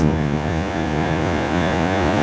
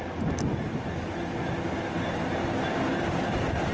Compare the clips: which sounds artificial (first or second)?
first